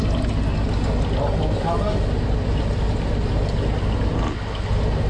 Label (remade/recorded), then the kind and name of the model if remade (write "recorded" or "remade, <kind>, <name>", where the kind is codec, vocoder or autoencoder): recorded